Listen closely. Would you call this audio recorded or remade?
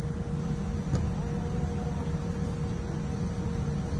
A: recorded